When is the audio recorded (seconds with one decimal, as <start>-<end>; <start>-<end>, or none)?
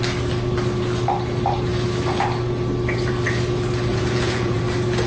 0.0-3.9; 4.6-5.1